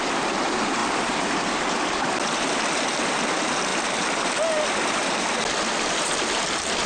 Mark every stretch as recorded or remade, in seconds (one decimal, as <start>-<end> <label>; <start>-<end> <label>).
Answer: 0.0-6.9 recorded